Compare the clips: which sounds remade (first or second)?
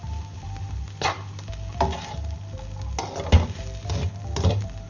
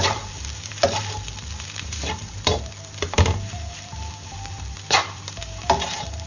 second